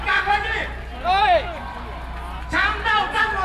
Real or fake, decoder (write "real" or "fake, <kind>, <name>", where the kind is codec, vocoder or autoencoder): real